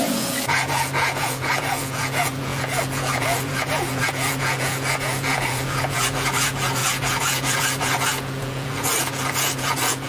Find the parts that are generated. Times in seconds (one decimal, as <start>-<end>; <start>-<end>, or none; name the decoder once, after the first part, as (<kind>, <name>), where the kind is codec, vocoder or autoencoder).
0.0-10.1 (vocoder, Vocos)